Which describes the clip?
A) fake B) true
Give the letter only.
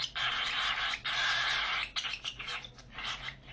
B